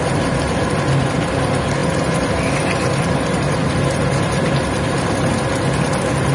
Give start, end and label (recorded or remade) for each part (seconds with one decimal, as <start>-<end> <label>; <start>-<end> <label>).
0.0-6.3 recorded